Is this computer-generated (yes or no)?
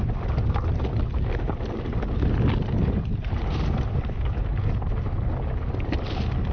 no